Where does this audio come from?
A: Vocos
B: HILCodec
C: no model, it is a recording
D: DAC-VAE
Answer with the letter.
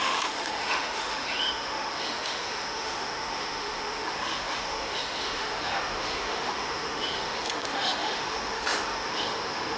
D